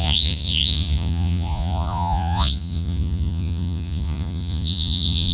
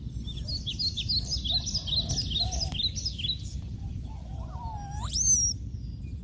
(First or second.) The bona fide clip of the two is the second